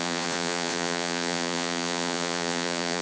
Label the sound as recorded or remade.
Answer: remade